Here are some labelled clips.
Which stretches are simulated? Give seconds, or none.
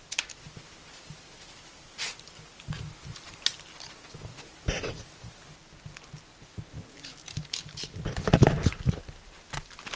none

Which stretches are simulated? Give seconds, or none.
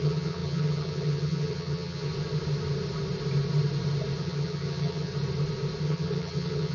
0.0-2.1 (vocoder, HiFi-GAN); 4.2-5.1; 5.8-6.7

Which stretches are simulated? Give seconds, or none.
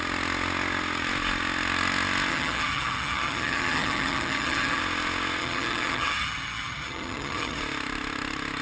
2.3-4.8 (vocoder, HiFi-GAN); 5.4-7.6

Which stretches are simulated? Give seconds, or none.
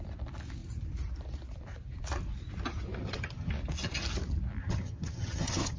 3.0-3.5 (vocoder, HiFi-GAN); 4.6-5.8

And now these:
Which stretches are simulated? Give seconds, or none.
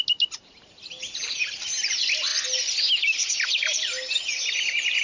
none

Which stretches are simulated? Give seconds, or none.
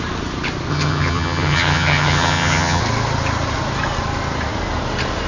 0.7-2.8 (vocoder, HiFi-GAN)